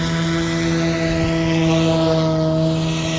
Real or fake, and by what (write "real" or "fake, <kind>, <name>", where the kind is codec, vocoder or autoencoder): real